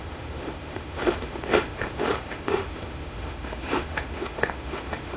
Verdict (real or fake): fake